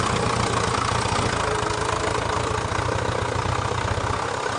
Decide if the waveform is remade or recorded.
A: recorded